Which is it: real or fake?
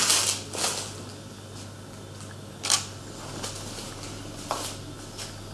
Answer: real